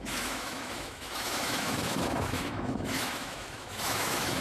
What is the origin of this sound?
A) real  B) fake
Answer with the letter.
B